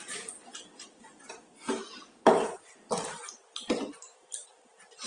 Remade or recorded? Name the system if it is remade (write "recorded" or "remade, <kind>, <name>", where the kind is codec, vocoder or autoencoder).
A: recorded